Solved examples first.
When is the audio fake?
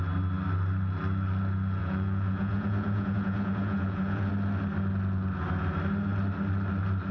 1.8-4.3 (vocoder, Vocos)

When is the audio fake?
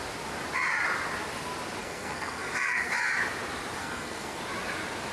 1.8-2.9 (codec, SNAC); 3.8-4.4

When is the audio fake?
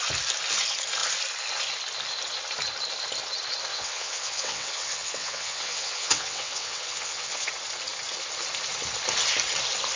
3.7-7.5 (vocoder, WaveNeXt)